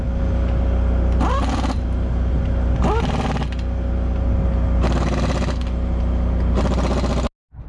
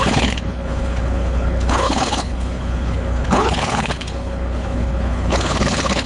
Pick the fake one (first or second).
second